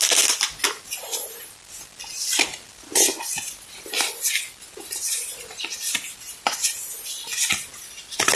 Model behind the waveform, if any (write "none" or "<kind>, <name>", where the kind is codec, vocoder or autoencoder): none